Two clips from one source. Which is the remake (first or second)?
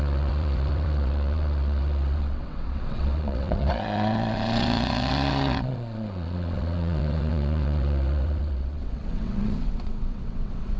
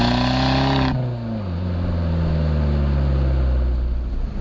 first